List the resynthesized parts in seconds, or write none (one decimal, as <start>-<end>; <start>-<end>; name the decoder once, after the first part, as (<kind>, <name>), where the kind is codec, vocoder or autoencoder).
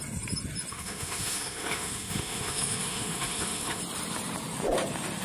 0.7-3.8 (autoencoder, DAC-VAE)